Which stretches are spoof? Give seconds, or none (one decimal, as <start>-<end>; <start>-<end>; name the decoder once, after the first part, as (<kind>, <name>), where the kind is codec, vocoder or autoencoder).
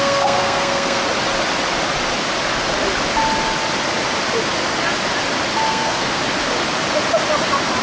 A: 0.0-1.0 (codec, SNAC); 5.7-6.2